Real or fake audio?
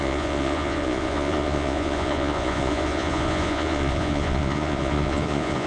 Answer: fake